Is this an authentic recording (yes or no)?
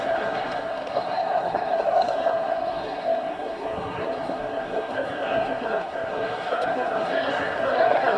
no